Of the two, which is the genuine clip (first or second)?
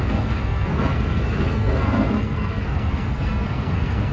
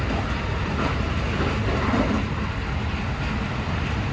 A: second